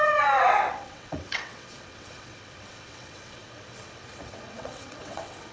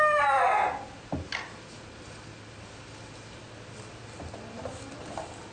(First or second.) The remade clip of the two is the first